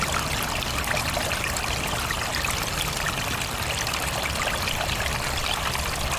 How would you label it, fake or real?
real